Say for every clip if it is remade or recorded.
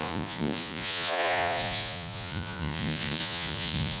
remade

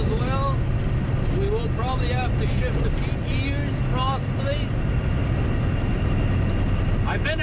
recorded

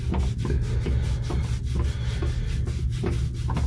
recorded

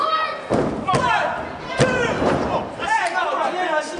recorded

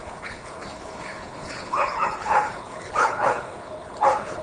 remade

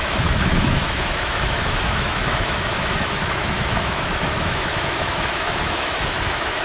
remade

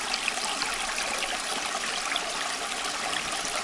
recorded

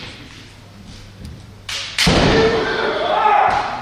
remade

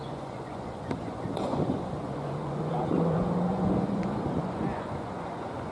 remade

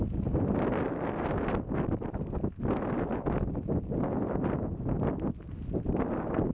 recorded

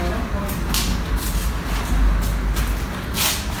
recorded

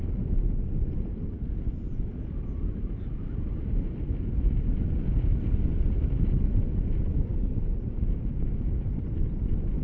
recorded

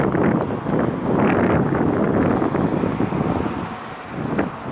recorded